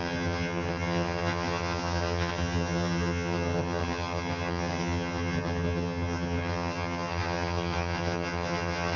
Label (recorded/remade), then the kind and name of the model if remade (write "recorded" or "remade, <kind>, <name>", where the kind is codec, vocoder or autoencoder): remade, vocoder, HiFi-GAN